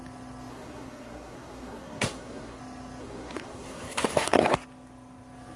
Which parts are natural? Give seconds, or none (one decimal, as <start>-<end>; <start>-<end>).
0.0-0.5; 2.6-3.0; 4.5-5.6